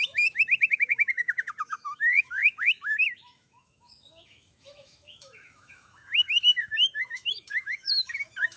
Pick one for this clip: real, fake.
fake